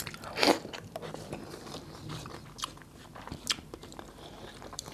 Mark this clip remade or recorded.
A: recorded